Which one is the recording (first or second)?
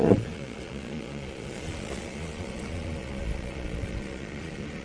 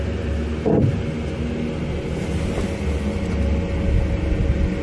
second